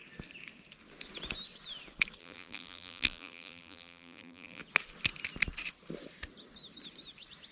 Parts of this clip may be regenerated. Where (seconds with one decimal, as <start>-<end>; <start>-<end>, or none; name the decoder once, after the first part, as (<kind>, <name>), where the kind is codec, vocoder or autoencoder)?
2.2-4.6 (vocoder, BigVGAN v2)